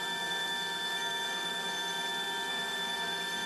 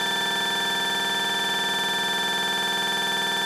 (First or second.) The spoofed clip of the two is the first